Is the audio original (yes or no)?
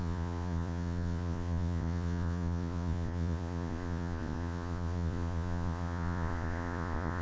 no